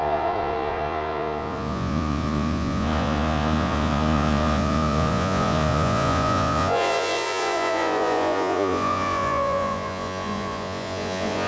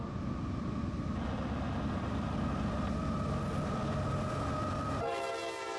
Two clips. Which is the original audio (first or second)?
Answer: second